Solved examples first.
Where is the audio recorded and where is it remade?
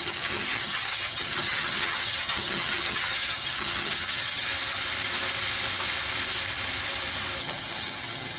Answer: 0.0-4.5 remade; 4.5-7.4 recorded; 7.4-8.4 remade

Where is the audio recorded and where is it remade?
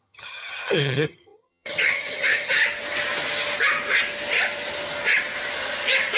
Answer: 0.0-2.6 remade; 2.6-6.2 recorded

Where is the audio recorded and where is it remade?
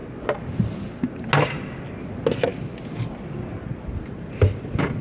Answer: 0.0-5.0 recorded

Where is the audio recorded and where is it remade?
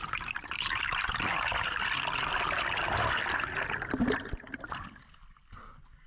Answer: 0.0-6.1 recorded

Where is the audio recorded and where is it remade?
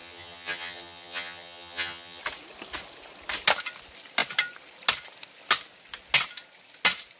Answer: 0.0-2.2 remade; 2.2-7.2 recorded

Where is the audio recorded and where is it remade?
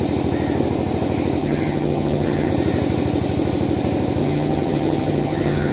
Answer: 0.0-1.4 recorded; 1.4-2.5 remade; 2.5-4.2 recorded; 4.2-5.7 remade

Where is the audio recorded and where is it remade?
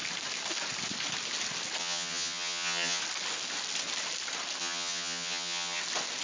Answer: 0.0-1.8 recorded; 1.8-3.0 remade; 3.0-4.6 recorded; 4.6-5.8 remade; 5.8-6.2 recorded